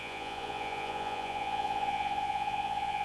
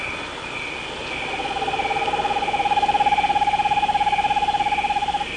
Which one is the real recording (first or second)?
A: second